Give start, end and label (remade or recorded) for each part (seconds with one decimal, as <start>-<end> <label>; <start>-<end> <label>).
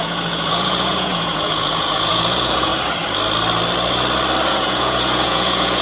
0.0-2.7 remade; 2.7-4.5 recorded; 4.5-5.8 remade